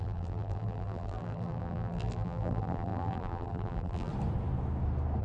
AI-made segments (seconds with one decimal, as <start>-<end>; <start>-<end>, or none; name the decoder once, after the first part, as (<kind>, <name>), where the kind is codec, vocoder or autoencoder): 0.0-4.1 (vocoder, BigVGAN v2)